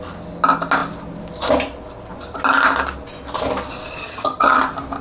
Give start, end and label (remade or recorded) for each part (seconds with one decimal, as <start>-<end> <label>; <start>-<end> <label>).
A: 0.0-4.0 recorded; 4.0-4.6 remade; 4.6-5.0 recorded